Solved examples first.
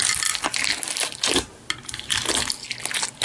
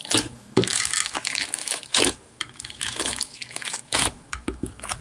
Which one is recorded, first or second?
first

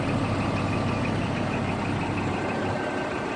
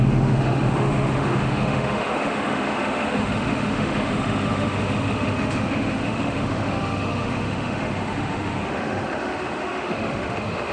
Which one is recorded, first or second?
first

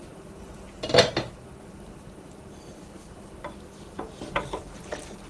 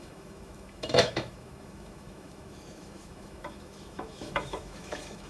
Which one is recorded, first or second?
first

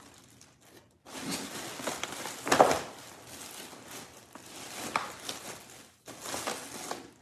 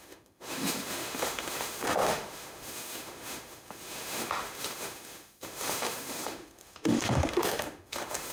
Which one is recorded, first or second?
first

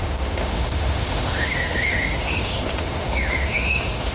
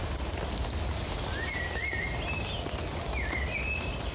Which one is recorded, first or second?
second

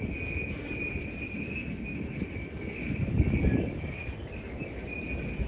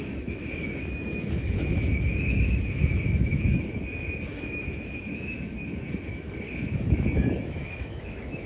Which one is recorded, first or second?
first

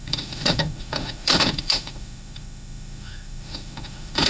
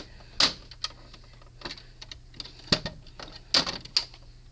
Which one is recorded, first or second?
second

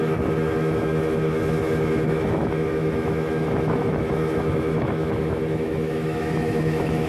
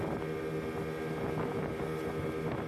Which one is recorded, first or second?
second